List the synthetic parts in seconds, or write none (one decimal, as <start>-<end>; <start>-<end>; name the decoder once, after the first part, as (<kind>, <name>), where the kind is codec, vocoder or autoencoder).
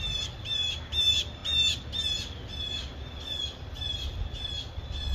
none